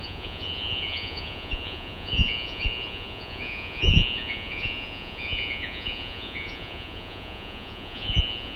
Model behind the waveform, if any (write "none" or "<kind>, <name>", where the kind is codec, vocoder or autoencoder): vocoder, Vocos